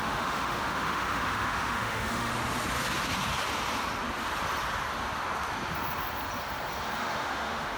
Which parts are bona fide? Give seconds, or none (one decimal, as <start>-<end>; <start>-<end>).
2.3-7.0